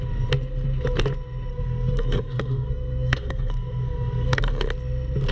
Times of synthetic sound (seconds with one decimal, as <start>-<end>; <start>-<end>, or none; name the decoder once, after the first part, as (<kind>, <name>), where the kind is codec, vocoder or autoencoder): 1.5-4.7 (codec, SNAC)